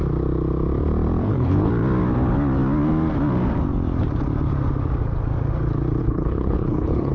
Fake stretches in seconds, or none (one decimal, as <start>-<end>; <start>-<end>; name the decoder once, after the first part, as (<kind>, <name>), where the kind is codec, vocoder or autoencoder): 1.2-1.7 (codec, HILCodec); 6.0-7.1